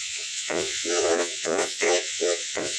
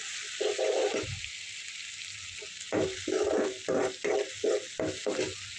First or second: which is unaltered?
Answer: second